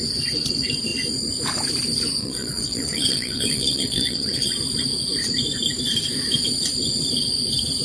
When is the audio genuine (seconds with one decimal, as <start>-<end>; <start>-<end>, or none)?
0.0-2.2; 4.5-7.8